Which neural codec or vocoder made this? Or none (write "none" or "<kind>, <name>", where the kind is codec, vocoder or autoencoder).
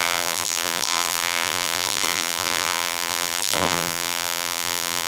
vocoder, BigVGAN v2